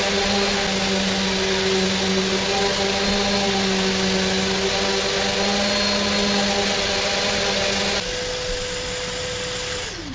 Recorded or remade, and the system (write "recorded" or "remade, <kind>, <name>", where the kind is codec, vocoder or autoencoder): recorded